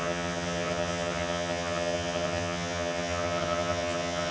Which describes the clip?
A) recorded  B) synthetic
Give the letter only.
B